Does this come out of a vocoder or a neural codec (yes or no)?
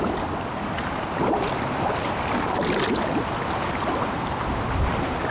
no